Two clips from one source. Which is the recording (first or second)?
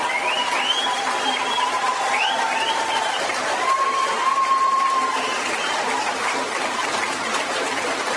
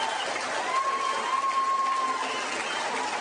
second